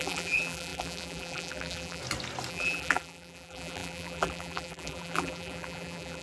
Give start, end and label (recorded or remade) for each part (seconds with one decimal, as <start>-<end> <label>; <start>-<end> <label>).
0.0-2.0 remade; 2.0-2.5 recorded; 2.5-6.2 remade